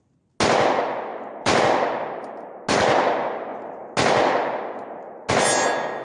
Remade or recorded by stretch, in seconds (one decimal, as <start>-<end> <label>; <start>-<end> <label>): 0.0-6.0 recorded